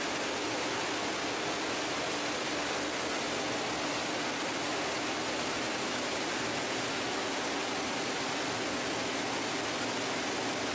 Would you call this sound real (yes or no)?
yes